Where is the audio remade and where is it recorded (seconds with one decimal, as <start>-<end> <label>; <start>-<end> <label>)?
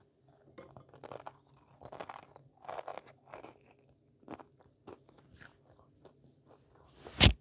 0.0-7.4 recorded